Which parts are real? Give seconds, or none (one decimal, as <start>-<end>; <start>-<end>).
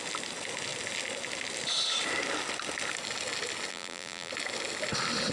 0.0-3.7; 4.3-5.3